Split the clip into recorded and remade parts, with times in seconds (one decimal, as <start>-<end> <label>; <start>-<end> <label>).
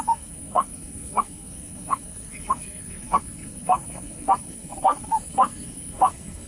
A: 0.0-6.5 remade